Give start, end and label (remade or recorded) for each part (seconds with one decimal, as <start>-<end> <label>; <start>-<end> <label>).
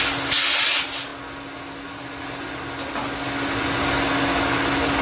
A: 0.0-5.0 recorded